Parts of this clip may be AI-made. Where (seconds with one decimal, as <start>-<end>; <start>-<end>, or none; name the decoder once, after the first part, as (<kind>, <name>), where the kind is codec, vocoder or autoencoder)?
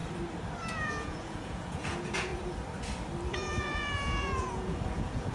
0.7-2.3 (vocoder, Vocos); 3.3-5.3